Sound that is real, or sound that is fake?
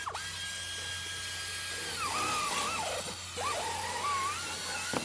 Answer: real